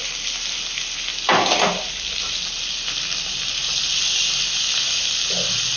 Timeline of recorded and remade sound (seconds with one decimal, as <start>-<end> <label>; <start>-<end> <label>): 0.0-5.8 recorded